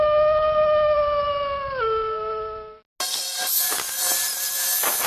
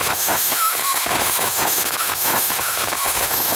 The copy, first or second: second